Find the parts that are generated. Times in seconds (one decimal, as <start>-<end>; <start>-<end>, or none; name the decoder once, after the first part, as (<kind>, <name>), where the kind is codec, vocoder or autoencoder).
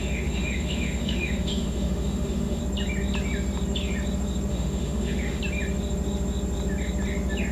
0.0-2.6 (autoencoder, DAC-VAE); 4.5-5.4